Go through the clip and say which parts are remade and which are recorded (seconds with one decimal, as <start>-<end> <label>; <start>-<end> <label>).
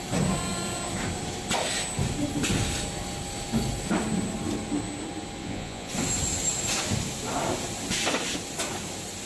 0.0-5.4 recorded; 5.4-5.9 remade; 5.9-9.3 recorded